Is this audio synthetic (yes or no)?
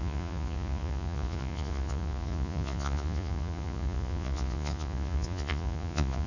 yes